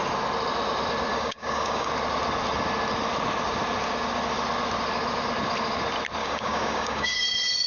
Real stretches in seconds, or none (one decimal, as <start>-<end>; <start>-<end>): 0.0-1.1; 1.9-6.2; 7.2-7.7